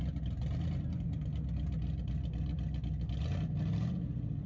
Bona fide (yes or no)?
yes